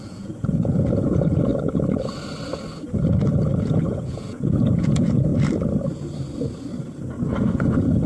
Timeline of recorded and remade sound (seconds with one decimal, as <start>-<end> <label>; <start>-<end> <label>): 0.0-1.5 remade; 1.5-3.6 recorded; 3.6-5.3 remade; 5.3-7.5 recorded; 7.5-8.1 remade